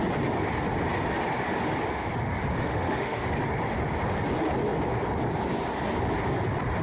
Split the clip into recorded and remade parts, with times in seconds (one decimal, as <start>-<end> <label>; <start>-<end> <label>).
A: 0.0-2.5 recorded; 2.5-3.3 remade; 3.3-6.8 recorded